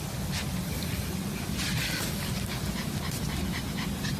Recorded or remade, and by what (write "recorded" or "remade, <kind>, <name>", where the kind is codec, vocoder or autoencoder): recorded